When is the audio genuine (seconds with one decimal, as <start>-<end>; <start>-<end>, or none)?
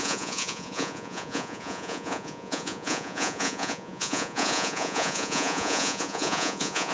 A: none